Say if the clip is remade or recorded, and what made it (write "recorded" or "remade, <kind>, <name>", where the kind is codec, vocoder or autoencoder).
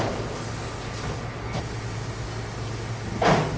recorded